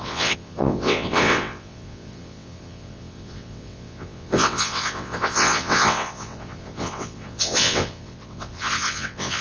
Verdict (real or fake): fake